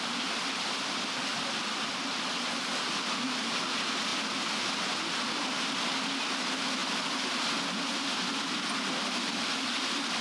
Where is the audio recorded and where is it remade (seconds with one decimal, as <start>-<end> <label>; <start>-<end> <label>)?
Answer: 0.0-10.2 recorded